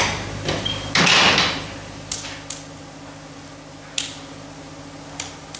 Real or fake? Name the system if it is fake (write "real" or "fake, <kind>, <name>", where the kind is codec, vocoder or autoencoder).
real